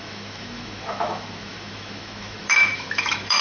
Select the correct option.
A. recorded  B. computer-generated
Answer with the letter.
B